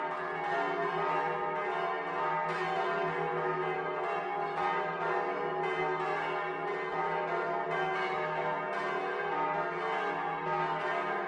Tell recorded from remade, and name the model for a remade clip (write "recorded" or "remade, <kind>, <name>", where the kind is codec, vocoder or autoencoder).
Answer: recorded